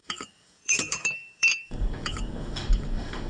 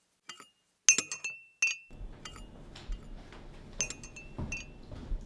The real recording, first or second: second